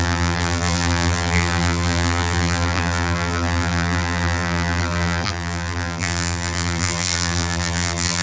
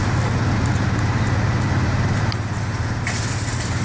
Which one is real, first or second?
second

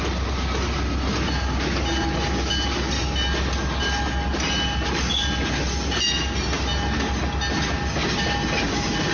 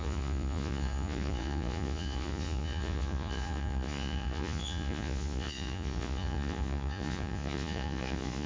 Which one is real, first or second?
first